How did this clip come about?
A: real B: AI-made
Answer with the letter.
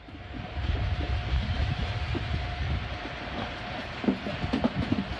A